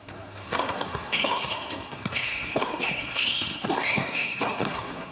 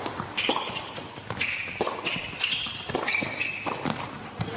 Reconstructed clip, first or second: first